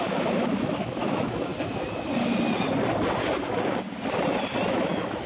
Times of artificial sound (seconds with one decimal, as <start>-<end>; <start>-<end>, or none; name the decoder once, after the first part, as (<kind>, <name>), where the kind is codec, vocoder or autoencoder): 0.0-1.5 (autoencoder, DAC-VAE); 4.7-5.3